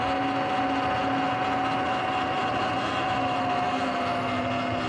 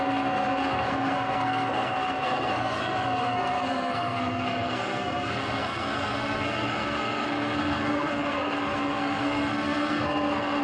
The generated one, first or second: second